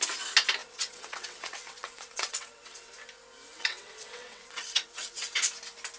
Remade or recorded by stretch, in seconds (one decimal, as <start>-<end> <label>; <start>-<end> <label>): 0.0-0.6 recorded; 0.6-2.9 remade; 2.9-3.5 recorded; 3.5-5.4 remade; 5.4-6.0 recorded